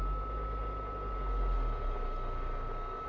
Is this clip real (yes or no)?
yes